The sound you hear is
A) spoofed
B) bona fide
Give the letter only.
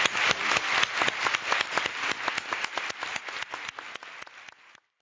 B